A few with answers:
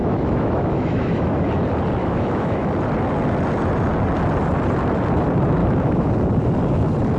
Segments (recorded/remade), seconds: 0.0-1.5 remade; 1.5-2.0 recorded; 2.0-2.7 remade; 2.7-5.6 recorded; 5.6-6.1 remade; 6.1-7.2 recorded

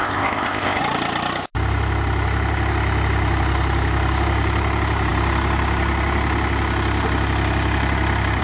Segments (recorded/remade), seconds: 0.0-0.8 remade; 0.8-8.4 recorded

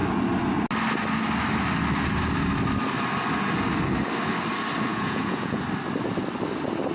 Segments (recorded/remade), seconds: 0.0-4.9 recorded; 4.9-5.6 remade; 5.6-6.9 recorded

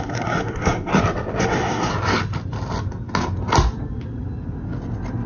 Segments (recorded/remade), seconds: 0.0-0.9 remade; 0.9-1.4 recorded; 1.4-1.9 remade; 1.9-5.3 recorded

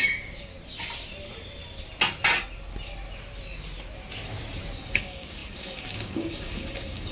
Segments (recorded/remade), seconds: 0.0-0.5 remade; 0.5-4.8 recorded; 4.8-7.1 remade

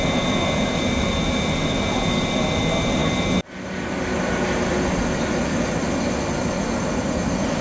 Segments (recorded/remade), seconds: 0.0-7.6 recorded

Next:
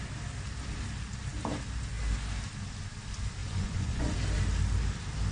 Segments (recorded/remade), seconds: 0.0-3.4 recorded; 3.4-4.1 remade; 4.1-5.3 recorded